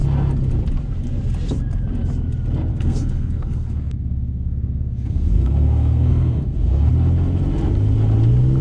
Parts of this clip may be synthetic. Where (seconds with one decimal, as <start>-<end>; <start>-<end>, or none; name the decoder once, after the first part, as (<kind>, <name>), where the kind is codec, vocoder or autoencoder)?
2.7-6.9 (codec, SNAC)